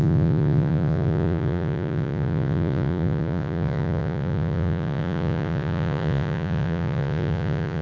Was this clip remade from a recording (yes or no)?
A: yes